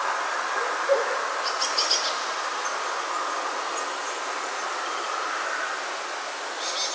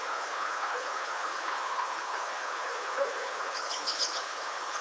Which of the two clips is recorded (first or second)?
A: first